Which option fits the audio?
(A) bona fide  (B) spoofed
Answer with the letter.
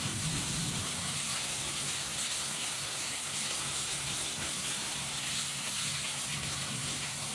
B